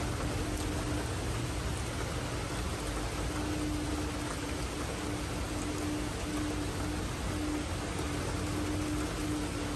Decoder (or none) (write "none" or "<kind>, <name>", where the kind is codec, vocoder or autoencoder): none